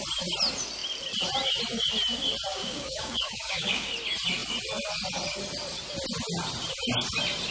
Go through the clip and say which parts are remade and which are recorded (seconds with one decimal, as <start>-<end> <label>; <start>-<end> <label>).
0.0-2.5 recorded; 2.5-3.9 remade; 3.9-7.5 recorded